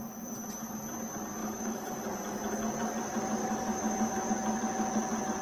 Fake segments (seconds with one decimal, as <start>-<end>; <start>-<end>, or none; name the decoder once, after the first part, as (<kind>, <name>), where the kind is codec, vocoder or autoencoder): 1.4-2.0 (autoencoder, DAC-VAE); 3.4-4.3